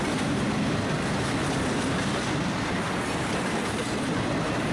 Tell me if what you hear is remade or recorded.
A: remade